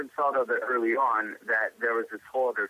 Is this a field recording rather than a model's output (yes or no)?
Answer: yes